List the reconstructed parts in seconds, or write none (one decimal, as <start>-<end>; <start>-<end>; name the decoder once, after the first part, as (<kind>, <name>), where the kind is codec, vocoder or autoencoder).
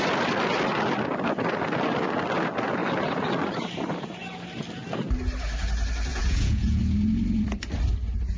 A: 6.1-6.8 (vocoder, Vocos)